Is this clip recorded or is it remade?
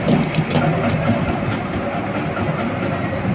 recorded